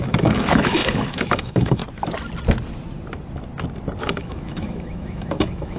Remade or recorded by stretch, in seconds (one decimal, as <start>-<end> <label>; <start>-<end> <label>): 0.0-1.8 remade; 1.8-4.0 recorded; 4.0-5.8 remade